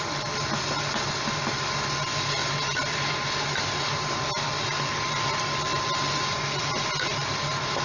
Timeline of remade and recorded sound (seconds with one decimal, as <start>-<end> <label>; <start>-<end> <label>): 0.0-7.8 remade